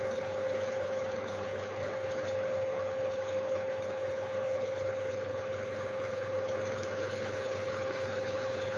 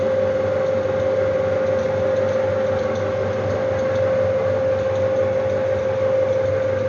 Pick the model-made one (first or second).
first